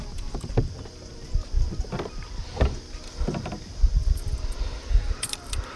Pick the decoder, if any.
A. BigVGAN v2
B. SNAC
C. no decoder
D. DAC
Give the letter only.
A